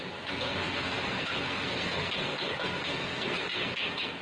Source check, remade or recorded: remade